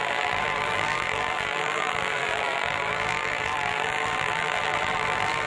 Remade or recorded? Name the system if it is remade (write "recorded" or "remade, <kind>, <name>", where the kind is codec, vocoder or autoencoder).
remade, vocoder, BigVGAN v2